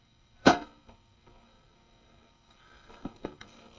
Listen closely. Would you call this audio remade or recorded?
remade